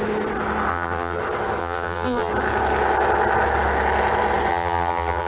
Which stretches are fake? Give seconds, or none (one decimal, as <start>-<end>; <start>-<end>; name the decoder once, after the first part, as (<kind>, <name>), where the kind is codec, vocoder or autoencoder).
0.7-1.2 (vocoder, BigVGAN v2); 1.6-2.3; 4.5-5.3